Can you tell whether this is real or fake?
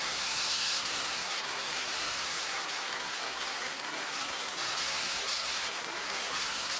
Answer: fake